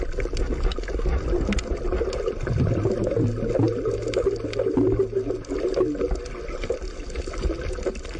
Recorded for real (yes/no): yes